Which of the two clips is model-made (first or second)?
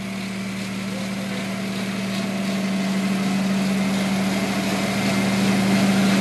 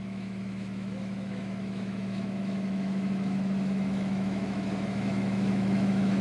second